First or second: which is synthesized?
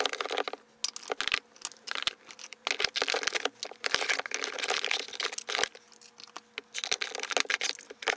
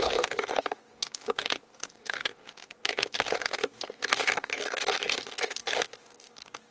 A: second